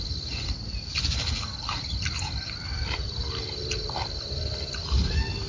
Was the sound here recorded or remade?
recorded